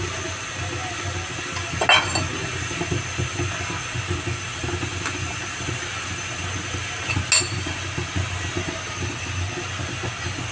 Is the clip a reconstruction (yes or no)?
no